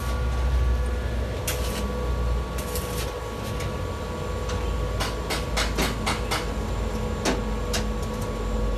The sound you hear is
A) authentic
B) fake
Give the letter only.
A